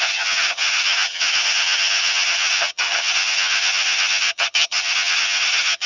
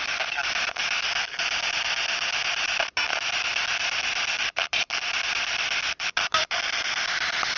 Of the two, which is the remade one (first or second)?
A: first